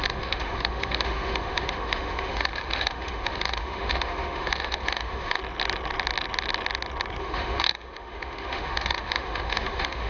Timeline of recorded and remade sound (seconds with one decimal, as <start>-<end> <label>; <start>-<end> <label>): 0.0-5.4 remade; 5.4-7.2 recorded; 7.2-10.1 remade